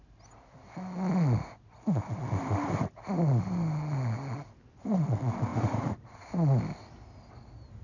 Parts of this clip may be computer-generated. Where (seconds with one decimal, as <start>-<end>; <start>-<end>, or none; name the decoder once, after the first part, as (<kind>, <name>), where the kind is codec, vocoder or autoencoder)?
5.5-6.3 (vocoder, Vocos)